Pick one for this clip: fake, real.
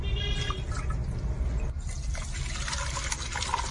real